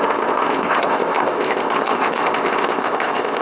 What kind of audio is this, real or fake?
fake